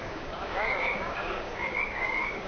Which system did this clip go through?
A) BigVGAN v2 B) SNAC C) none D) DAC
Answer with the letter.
D